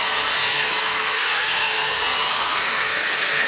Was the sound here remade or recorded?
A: remade